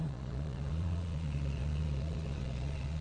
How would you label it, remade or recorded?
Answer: remade